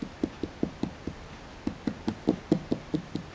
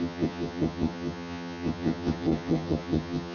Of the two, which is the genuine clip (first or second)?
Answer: first